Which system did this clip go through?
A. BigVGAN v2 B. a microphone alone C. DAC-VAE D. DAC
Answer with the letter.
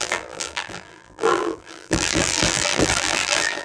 A